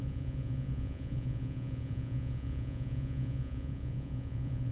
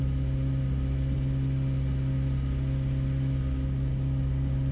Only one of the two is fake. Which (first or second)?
first